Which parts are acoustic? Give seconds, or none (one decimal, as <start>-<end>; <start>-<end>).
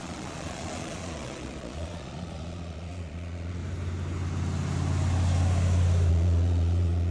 3.6-6.1